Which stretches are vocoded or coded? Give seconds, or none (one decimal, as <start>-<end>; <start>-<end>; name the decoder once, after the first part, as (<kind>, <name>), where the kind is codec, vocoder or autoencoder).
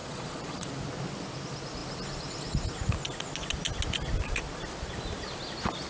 0.0-0.7 (vocoder, Vocos)